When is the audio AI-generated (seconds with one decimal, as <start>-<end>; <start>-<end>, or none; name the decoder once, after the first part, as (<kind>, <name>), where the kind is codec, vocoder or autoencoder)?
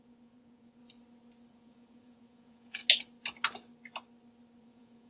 0.0-0.8 (vocoder, Vocos); 1.5-2.8; 4.6-5.1